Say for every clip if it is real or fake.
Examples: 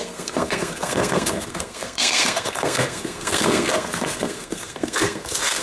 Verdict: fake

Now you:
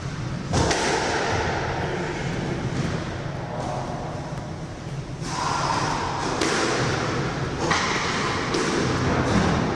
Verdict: real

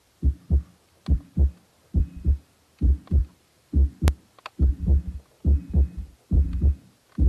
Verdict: real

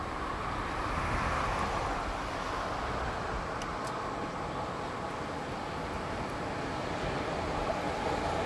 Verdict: real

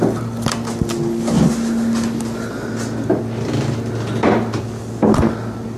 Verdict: real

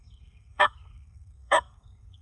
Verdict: fake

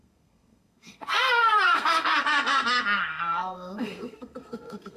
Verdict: fake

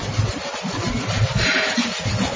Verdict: real